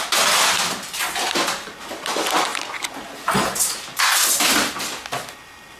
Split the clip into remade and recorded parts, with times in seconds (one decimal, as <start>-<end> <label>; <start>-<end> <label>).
0.0-5.8 recorded